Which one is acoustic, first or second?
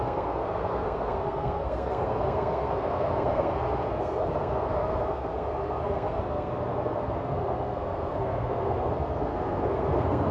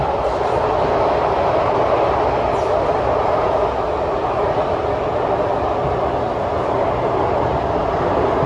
second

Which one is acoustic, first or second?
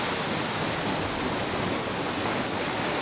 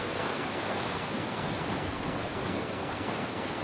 first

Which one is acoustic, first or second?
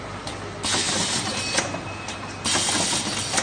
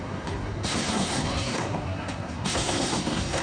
first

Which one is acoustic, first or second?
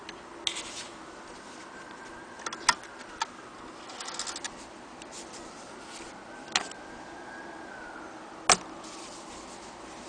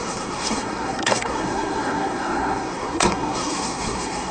first